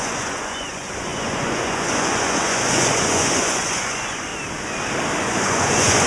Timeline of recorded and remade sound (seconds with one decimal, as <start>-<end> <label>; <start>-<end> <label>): 0.0-4.3 remade; 4.3-5.2 recorded; 5.2-6.1 remade